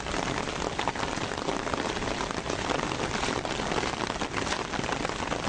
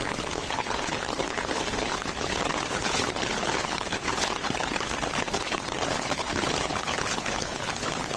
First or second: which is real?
first